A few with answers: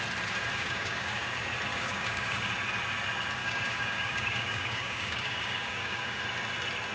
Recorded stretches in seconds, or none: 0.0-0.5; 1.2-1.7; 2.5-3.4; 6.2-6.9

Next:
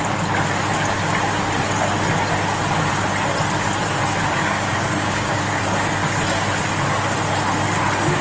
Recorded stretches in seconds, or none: 0.0-4.4; 5.6-8.2

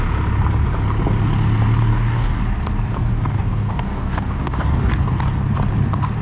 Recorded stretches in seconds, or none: 0.0-1.9; 2.4-3.1; 4.9-6.2

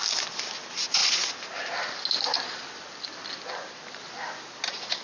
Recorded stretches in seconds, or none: 0.0-5.0

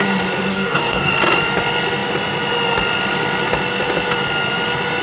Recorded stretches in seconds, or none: 0.0-0.5; 1.1-5.0

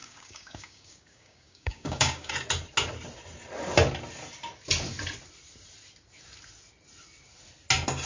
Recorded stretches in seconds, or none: 2.3-8.1